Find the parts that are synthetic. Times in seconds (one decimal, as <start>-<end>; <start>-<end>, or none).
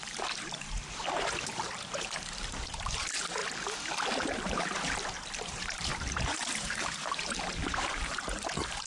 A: 0.0-3.4; 4.5-8.9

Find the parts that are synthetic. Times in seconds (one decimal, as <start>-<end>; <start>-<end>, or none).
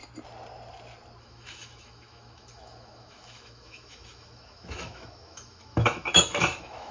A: 1.2-6.9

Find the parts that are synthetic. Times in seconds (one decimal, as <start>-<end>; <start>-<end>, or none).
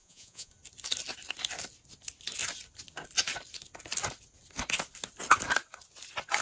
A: 0.0-0.5